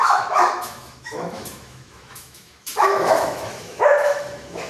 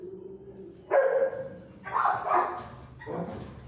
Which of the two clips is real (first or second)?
second